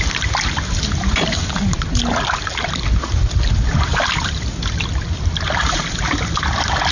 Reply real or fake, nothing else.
fake